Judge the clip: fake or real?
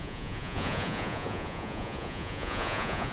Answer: fake